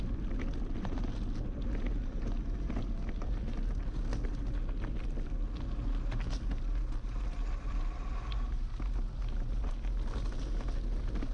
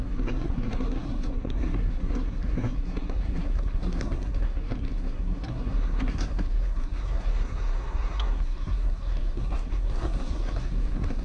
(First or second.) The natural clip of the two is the first